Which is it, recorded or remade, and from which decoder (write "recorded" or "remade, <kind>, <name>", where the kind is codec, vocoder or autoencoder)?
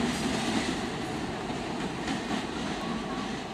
recorded